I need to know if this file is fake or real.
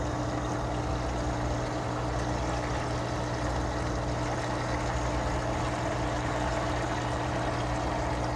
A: real